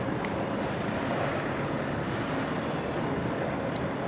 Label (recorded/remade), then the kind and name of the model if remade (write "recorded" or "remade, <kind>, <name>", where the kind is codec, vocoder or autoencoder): recorded